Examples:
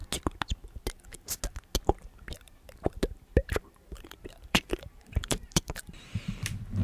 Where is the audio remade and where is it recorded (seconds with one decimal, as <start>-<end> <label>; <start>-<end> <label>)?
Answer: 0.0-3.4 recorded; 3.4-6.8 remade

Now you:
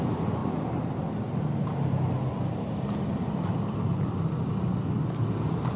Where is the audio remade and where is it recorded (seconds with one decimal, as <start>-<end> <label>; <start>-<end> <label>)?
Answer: 0.0-5.8 recorded

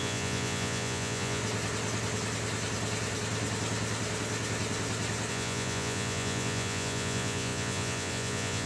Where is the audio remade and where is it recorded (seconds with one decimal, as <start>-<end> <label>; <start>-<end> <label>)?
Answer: 0.0-1.4 remade; 1.4-5.3 recorded; 5.3-8.7 remade

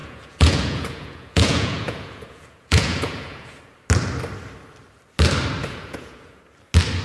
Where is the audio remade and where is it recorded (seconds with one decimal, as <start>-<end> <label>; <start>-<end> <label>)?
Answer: 0.0-3.6 remade; 3.6-5.6 recorded; 5.6-6.4 remade; 6.4-7.0 recorded

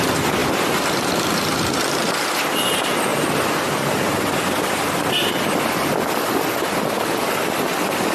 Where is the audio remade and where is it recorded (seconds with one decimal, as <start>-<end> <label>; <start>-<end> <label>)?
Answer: 0.0-0.4 recorded; 0.4-2.1 remade; 2.1-8.1 recorded

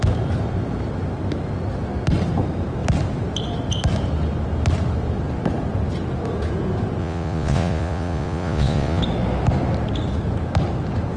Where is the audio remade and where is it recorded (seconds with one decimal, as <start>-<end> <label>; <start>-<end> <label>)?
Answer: 0.0-7.0 recorded; 7.0-9.0 remade; 9.0-11.2 recorded